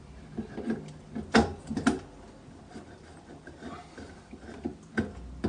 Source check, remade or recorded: recorded